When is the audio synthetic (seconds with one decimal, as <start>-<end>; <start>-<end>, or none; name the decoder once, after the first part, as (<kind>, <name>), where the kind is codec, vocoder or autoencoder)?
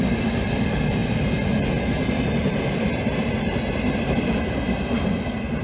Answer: none